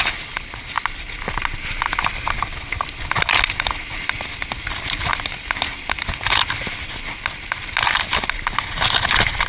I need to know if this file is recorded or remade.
recorded